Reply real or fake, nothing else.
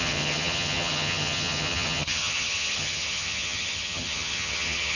fake